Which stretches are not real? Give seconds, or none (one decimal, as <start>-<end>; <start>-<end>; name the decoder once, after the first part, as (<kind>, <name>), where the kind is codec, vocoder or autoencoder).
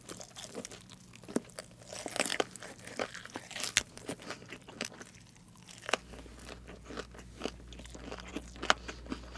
2.3-5.5 (vocoder, BigVGAN v2)